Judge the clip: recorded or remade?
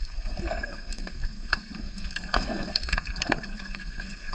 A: remade